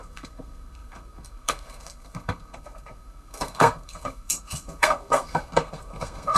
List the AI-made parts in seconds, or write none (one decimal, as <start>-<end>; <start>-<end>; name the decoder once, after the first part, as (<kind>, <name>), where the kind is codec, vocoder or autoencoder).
0.0-6.4 (codec, SNAC)